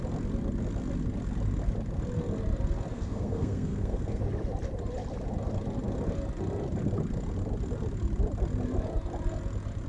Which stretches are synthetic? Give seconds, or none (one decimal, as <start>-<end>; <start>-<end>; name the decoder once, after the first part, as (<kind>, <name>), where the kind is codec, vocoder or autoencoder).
2.9-4.2 (codec, SNAC)